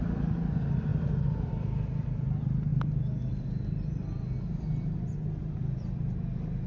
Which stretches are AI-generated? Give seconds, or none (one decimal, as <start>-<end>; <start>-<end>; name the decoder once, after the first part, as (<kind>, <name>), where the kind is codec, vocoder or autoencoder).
none